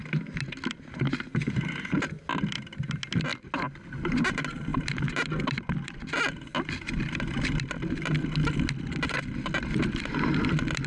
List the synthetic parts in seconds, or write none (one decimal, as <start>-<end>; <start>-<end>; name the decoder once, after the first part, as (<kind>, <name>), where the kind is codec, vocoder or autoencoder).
none